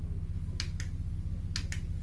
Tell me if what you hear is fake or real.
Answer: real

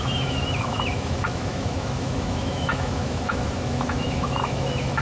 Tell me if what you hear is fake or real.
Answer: fake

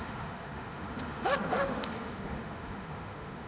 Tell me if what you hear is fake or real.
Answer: fake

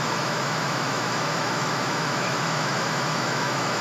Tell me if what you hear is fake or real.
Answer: fake